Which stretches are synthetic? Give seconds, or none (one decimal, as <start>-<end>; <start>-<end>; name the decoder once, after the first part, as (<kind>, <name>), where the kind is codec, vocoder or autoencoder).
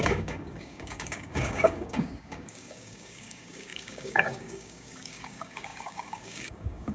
0.0-6.9 (codec, DAC)